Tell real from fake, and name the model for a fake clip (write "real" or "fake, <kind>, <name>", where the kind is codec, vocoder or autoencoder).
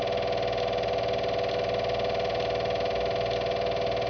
real